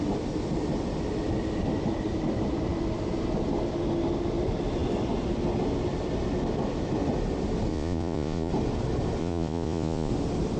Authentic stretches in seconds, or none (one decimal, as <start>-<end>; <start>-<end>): 0.0-7.7; 8.5-9.2; 10.1-10.6